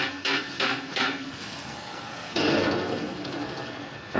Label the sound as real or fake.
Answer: fake